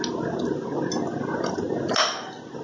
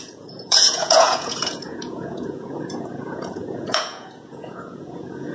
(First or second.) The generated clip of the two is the second